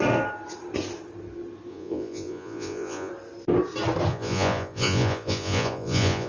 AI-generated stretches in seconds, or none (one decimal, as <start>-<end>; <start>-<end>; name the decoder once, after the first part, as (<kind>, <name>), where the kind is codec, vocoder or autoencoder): 1.7-3.1 (vocoder, Vocos); 4.1-6.3